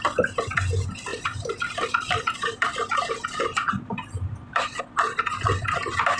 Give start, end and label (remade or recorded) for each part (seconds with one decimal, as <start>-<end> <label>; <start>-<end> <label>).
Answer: 0.0-1.1 recorded; 1.1-4.8 remade; 4.8-6.2 recorded